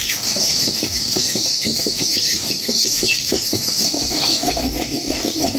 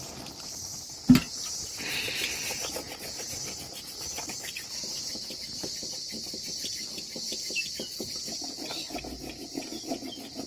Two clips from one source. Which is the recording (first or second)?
second